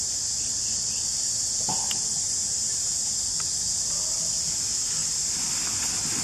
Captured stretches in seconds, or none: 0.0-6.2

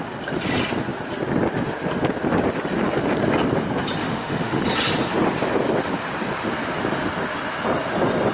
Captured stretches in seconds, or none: 0.0-4.0; 4.6-8.3